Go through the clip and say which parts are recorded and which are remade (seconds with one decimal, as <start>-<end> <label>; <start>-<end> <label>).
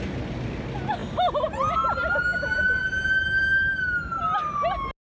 0.0-5.1 recorded